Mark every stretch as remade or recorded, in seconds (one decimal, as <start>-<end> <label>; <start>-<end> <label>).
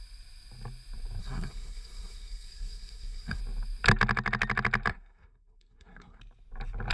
0.0-1.2 recorded; 1.2-3.4 remade; 3.4-4.9 recorded; 4.9-6.2 remade; 6.2-6.9 recorded